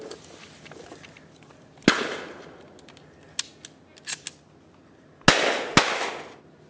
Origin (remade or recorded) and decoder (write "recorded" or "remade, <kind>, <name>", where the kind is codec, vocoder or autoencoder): recorded